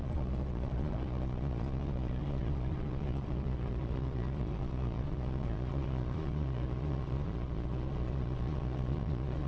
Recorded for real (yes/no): no